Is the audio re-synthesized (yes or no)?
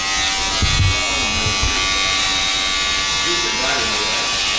no